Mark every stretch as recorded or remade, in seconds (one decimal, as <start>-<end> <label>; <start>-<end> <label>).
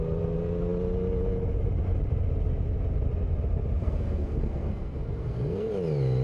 0.0-3.8 recorded; 3.8-5.7 remade; 5.7-6.2 recorded